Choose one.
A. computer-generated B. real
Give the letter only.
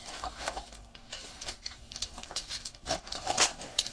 A